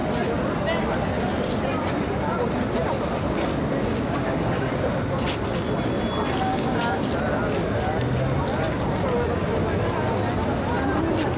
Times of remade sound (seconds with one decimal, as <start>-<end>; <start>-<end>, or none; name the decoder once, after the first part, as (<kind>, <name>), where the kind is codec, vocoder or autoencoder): 3.8-4.7 (codec, DAC); 6.5-7.1